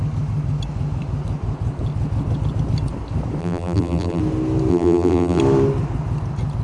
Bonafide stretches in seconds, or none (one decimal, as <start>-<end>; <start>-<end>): 0.0-3.4; 4.2-4.7; 5.4-6.6